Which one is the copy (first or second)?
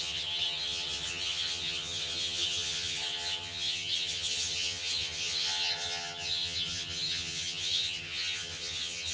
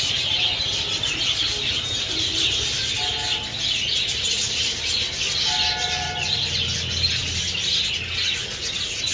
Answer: first